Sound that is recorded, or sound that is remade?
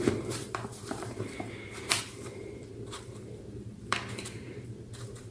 remade